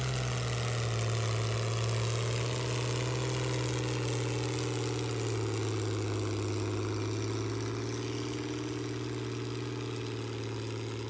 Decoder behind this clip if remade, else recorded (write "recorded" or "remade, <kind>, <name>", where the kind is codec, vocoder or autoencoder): recorded